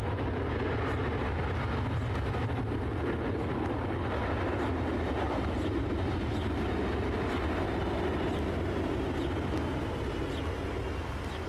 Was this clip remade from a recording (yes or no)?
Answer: no